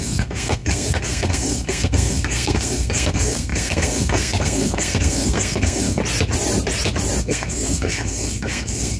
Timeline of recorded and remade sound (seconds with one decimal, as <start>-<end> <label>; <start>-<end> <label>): 0.0-6.0 remade; 6.0-7.2 recorded; 7.2-9.0 remade